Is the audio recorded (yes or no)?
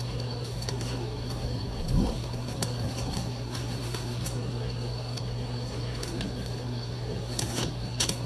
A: no